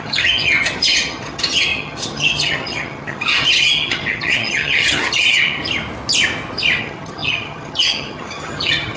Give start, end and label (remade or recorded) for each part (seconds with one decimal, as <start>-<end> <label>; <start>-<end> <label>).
0.0-5.6 remade; 5.6-6.8 recorded; 6.8-9.0 remade

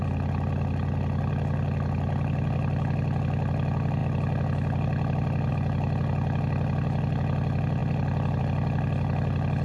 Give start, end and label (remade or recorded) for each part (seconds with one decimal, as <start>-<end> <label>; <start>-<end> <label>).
0.0-9.6 recorded

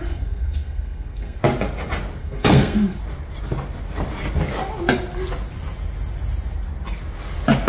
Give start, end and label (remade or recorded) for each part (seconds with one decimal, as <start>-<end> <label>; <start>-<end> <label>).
0.0-1.4 remade; 1.4-2.2 recorded; 2.2-3.0 remade; 3.0-7.7 recorded

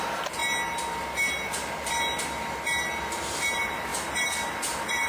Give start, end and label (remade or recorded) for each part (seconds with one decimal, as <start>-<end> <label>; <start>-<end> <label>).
0.0-0.4 remade; 0.4-3.5 recorded; 3.5-3.9 remade; 3.9-4.5 recorded; 4.5-5.1 remade

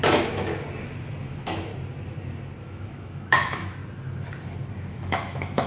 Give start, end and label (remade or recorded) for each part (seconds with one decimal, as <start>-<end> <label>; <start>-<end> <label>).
0.0-0.5 remade; 0.5-1.2 recorded; 1.2-1.7 remade; 1.7-2.6 recorded; 2.6-3.8 remade; 3.8-4.9 recorded; 4.9-5.7 remade

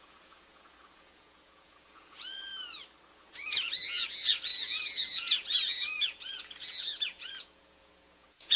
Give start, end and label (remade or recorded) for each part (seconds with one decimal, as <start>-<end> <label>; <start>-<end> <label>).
0.0-2.5 remade; 2.5-3.1 recorded; 3.1-8.6 remade

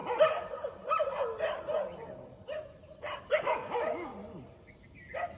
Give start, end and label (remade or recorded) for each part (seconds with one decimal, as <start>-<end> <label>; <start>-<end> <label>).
0.0-3.2 recorded; 3.2-4.1 remade; 4.1-5.4 recorded

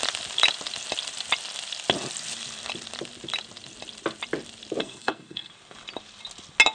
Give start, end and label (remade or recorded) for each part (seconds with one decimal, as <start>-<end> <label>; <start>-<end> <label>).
0.0-4.8 recorded; 4.8-5.5 remade; 5.5-6.7 recorded